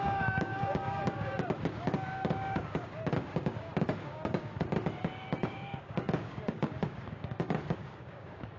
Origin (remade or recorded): remade